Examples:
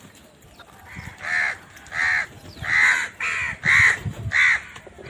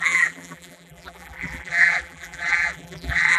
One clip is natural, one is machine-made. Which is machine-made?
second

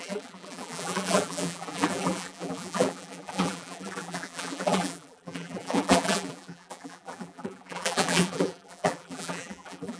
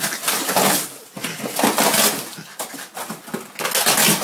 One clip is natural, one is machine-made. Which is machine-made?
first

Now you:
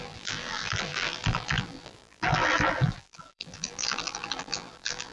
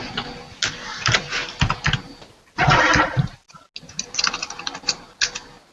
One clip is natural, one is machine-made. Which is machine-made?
first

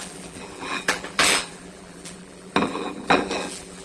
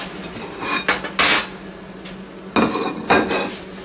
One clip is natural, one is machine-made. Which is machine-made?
first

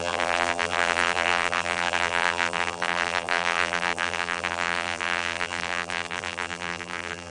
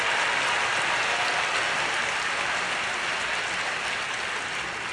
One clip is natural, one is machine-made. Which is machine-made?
first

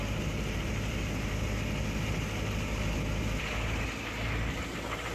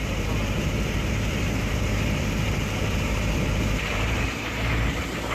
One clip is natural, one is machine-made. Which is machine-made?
second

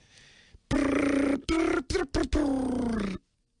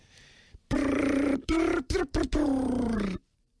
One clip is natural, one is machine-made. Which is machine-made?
second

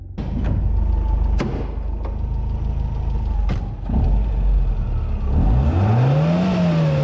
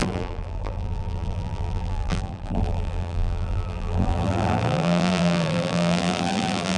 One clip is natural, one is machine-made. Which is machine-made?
second